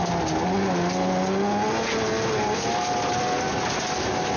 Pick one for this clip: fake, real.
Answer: real